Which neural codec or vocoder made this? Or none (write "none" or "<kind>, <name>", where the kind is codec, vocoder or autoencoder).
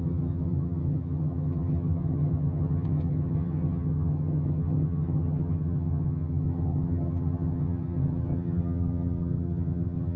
vocoder, HiFi-GAN